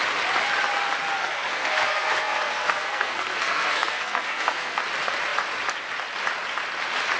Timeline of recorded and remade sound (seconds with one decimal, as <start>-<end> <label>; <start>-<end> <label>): 0.0-1.2 recorded; 1.2-4.8 remade; 4.8-7.2 recorded